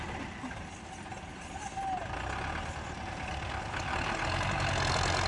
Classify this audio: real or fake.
real